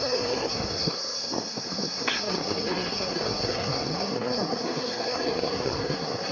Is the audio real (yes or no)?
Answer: no